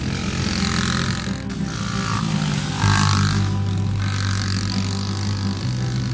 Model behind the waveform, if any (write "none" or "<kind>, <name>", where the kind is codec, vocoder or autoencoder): none